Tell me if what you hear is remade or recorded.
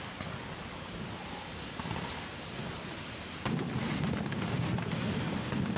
recorded